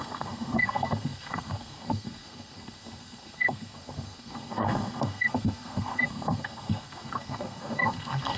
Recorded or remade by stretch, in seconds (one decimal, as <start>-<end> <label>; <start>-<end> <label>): 0.0-8.4 remade